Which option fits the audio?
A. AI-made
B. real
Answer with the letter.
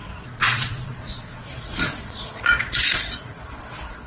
A